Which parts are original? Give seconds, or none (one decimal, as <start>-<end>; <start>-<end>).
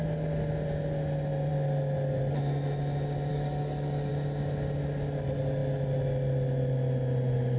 0.0-3.3; 4.1-7.6